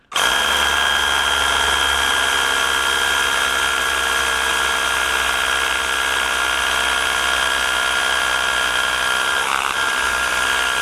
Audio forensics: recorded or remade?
recorded